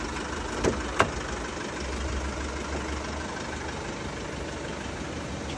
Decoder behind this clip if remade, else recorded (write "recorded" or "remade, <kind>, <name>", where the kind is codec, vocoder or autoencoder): recorded